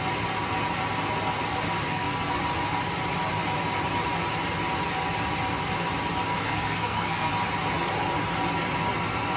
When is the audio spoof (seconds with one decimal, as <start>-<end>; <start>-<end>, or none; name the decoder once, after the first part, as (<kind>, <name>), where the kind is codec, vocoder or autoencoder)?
1.9-2.4 (codec, SNAC); 6.3-7.3